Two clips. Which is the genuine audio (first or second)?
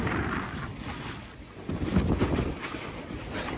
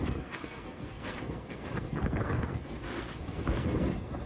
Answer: first